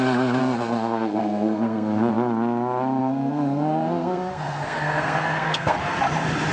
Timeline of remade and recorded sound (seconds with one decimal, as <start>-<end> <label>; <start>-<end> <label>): 0.0-0.4 recorded; 0.4-2.1 remade; 2.1-3.0 recorded; 3.0-6.0 remade; 6.0-6.5 recorded